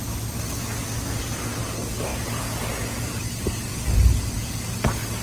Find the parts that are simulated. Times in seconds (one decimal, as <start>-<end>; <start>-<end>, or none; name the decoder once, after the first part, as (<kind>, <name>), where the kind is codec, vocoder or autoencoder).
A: none